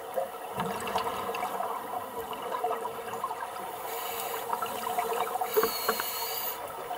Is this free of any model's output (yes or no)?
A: no